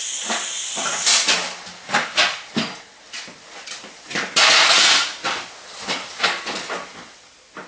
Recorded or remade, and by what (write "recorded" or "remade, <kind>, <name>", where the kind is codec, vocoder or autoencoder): recorded